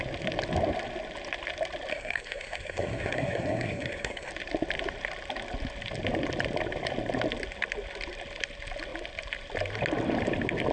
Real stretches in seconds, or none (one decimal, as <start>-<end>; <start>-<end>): 0.0-1.9; 4.3-10.7